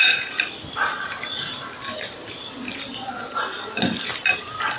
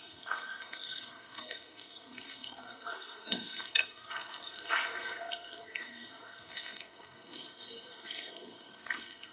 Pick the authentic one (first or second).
first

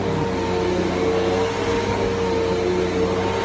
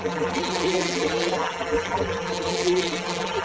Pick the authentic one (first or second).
first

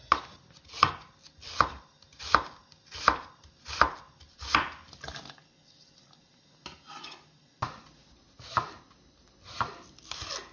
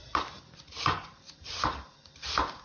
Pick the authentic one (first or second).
first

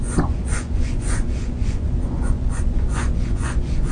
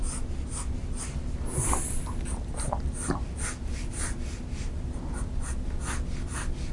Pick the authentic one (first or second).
second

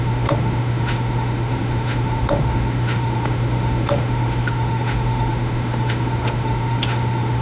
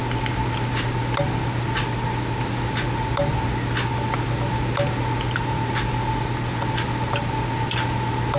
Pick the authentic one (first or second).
second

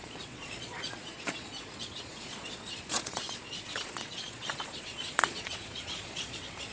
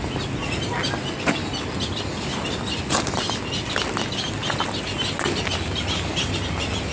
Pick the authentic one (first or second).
second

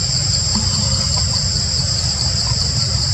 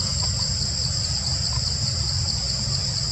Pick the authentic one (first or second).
second